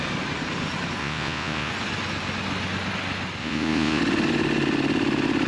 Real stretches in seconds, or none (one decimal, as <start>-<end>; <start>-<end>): 0.0-1.0; 1.7-3.4; 4.0-5.5